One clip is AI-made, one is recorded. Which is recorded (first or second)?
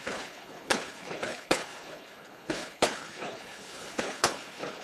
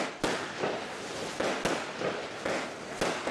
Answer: second